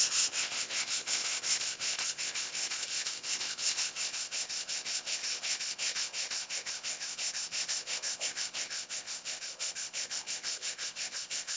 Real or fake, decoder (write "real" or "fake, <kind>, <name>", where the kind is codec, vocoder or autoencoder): fake, codec, ZipCodec